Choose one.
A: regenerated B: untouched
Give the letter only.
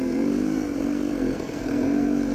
A